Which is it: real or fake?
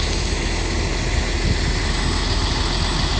real